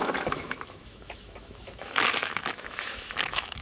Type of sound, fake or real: fake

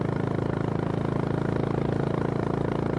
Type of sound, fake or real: real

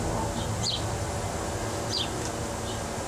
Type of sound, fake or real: real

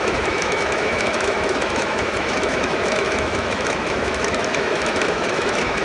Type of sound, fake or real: fake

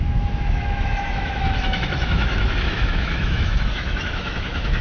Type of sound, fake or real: fake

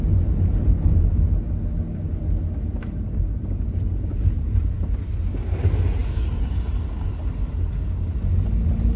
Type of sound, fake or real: real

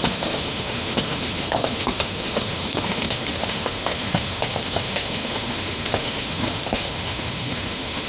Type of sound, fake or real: fake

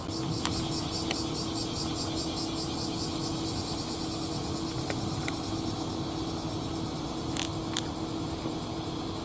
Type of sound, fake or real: real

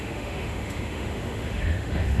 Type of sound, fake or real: fake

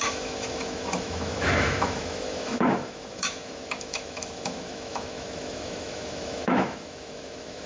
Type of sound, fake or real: fake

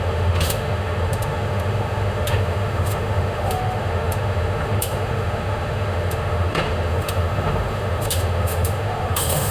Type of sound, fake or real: fake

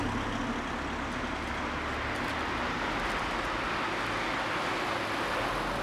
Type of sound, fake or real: real